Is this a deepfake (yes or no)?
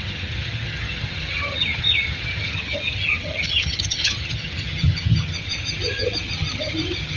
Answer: yes